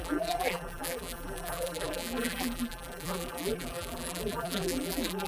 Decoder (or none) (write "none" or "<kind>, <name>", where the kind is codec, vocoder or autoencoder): vocoder, BigVGAN v2